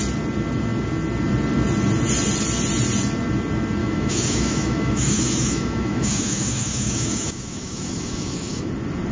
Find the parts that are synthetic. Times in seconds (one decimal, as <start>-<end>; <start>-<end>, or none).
3.8-8.7